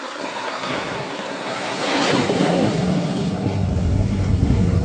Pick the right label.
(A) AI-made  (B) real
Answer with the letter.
A